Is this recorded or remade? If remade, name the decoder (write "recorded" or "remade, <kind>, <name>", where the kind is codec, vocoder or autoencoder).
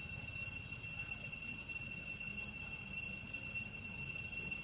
recorded